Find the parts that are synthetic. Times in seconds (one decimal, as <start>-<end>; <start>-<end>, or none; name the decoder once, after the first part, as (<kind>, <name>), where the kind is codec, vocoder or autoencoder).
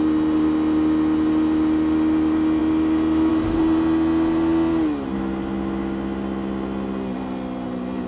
none